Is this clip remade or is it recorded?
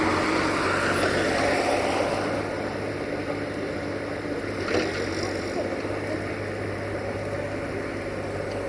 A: recorded